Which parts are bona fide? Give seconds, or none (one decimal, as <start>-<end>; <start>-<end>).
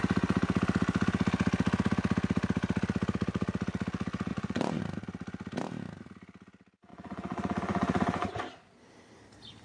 0.0-4.3; 4.8-6.9; 8.4-9.6